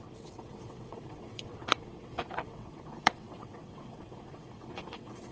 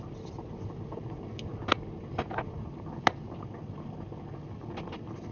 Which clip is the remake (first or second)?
first